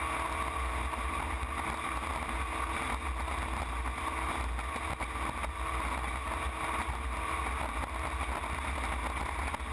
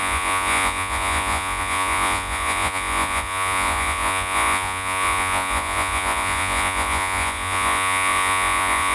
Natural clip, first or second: first